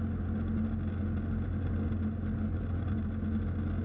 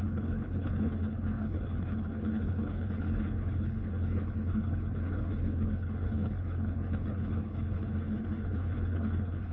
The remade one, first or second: second